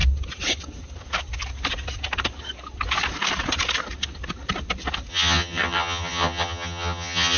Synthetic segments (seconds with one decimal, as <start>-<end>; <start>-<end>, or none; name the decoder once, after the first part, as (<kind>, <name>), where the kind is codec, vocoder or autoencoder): 5.1-7.4 (vocoder, HiFi-GAN)